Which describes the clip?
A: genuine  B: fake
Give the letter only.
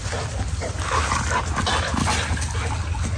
A